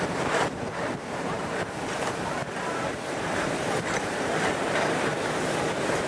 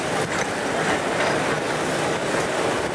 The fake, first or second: first